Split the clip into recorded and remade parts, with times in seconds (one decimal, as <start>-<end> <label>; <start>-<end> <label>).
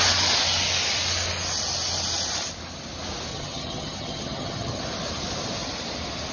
0.0-3.3 recorded; 3.3-4.8 remade; 4.8-6.3 recorded